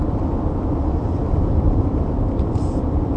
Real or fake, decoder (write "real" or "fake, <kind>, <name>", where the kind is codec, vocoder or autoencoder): fake, vocoder, BigVGAN v2